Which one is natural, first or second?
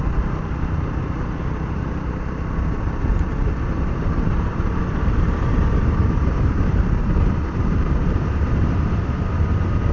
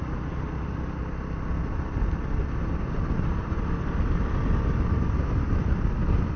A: second